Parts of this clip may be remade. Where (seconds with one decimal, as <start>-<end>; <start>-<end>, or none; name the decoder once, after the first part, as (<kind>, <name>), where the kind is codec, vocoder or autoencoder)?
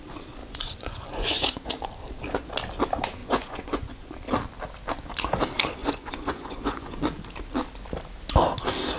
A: 0.4-1.7 (vocoder, Vocos); 3.2-4.1; 5.8-7.0